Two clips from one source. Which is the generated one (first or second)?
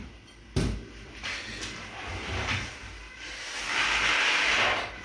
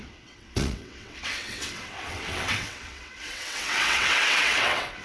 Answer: second